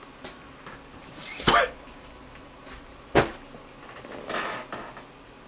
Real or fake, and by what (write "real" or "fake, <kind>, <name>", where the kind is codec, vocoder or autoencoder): real